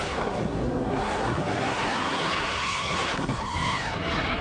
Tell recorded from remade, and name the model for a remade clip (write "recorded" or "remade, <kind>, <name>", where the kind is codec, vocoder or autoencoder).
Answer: remade, codec, SNAC